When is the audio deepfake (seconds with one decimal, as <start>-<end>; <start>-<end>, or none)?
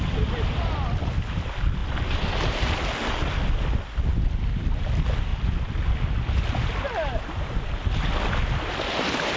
none